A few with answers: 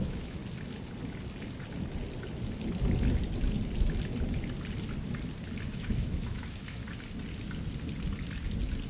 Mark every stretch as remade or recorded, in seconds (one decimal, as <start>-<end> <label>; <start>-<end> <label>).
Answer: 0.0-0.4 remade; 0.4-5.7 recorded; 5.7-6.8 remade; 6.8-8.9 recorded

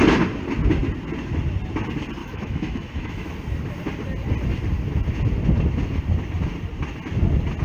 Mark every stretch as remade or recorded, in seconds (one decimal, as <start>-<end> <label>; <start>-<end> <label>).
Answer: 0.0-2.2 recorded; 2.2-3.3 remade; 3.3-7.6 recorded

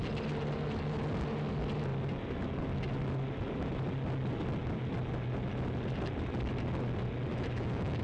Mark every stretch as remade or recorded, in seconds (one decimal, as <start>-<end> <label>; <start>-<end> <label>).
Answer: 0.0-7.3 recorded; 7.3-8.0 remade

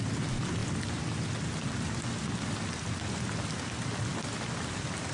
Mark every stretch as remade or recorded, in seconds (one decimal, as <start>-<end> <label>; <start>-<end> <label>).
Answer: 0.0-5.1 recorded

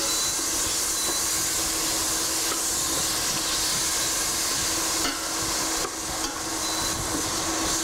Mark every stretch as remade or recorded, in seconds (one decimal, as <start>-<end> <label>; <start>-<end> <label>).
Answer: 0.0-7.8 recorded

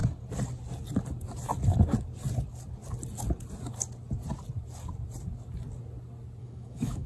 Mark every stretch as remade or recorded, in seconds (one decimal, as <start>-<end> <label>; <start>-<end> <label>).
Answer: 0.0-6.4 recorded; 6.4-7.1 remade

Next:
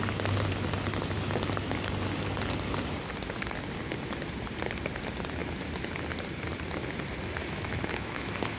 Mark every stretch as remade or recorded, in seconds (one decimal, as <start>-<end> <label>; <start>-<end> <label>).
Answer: 0.0-7.4 recorded; 7.4-8.6 remade